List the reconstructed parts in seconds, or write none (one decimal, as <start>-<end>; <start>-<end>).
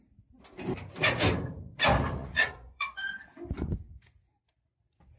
2.2-3.2